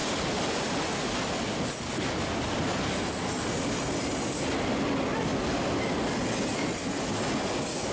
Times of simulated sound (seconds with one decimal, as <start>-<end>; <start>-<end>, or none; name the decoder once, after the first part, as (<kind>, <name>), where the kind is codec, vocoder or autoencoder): none